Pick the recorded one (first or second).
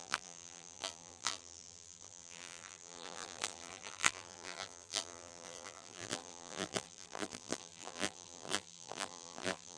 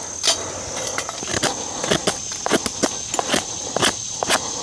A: second